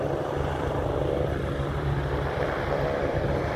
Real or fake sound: fake